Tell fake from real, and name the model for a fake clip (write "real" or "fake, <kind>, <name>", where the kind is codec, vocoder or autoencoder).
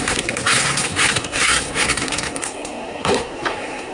fake, codec, SNAC